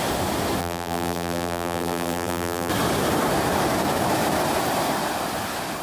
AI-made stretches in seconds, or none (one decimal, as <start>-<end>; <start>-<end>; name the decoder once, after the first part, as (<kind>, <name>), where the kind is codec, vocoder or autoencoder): 0.6-2.7 (vocoder, BigVGAN v2)